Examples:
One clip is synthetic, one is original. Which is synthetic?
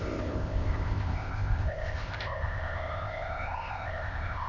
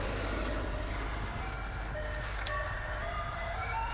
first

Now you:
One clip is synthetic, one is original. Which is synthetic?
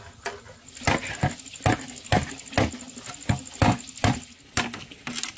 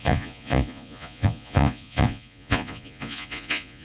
second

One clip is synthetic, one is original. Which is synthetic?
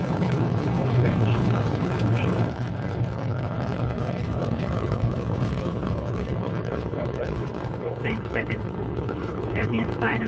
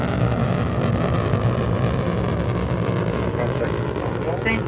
first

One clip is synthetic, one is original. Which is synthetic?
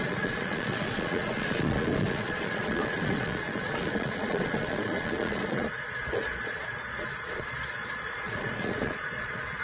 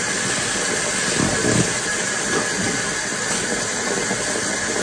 first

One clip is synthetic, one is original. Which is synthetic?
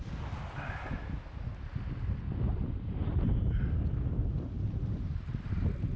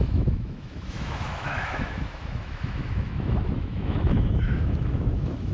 second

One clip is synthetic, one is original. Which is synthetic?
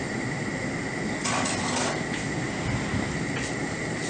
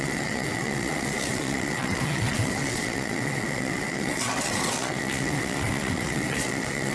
second